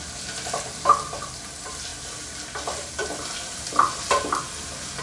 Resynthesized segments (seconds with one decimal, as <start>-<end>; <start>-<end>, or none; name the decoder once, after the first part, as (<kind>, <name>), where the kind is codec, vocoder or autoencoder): none